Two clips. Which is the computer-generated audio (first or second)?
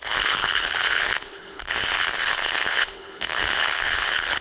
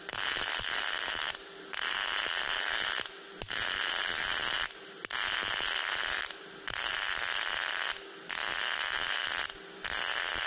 first